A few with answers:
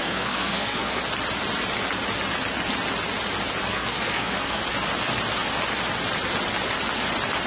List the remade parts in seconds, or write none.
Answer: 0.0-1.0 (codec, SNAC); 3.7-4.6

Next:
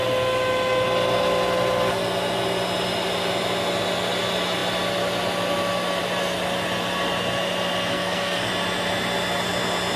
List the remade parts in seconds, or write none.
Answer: 7.9-8.5 (codec, SNAC)

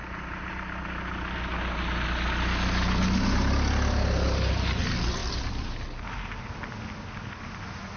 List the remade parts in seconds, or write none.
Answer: none